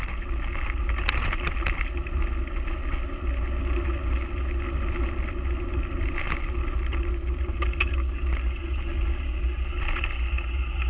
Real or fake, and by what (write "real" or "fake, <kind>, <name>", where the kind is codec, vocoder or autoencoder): real